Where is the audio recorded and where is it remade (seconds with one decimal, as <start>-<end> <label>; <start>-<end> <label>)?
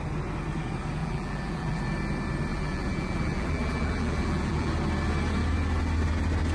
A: 0.0-1.0 recorded; 1.0-1.8 remade; 1.8-2.5 recorded; 2.5-4.7 remade; 4.7-6.5 recorded